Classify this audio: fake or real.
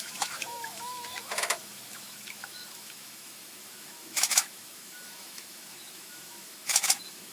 fake